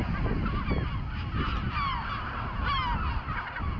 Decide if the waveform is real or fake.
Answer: real